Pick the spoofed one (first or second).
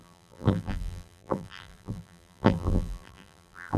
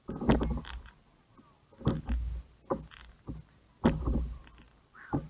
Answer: first